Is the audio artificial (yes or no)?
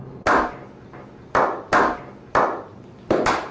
no